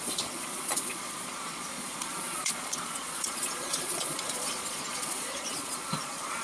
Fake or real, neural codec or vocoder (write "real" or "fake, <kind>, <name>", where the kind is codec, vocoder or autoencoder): fake, vocoder, Vocos